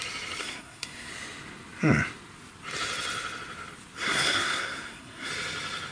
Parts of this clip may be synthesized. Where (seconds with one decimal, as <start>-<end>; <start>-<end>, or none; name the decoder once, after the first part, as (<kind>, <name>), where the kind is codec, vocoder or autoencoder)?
0.4-1.1 (codec, SNAC); 4.0-5.3